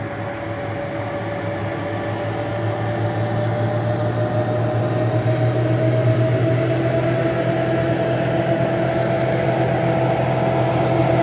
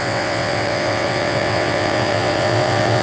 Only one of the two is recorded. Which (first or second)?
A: first